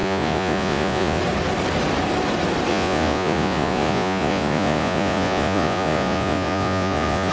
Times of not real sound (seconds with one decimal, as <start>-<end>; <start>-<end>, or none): 0.0-1.2; 2.7-7.3